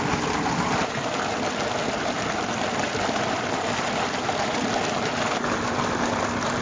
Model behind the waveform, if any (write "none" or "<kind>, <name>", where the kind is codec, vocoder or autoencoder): none